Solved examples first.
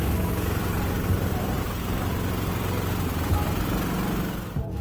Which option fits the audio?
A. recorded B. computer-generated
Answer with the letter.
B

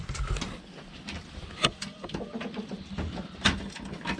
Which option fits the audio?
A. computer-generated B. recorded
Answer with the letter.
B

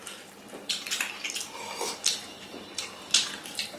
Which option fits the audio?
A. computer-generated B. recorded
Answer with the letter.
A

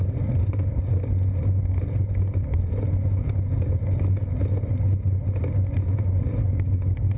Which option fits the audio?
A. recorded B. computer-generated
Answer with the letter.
A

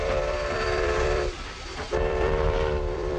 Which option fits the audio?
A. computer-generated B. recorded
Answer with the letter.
A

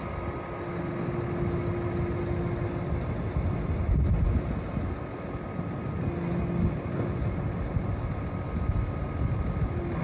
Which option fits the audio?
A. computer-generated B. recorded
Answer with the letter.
B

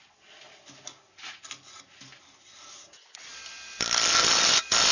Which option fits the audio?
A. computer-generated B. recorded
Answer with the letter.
B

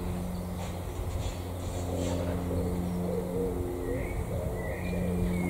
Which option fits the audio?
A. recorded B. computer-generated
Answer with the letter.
A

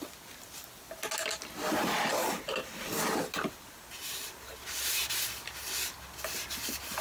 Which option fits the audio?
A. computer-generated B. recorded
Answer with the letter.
B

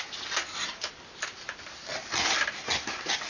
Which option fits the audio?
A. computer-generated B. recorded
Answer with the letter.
A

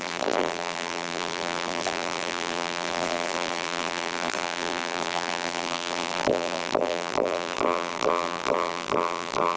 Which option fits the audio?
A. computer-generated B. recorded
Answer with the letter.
A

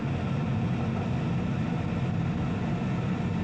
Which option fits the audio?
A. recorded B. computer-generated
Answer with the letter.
A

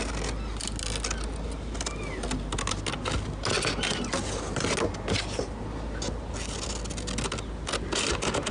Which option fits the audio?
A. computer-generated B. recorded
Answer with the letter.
B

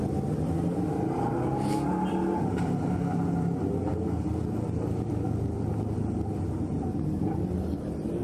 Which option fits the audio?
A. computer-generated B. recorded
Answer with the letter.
B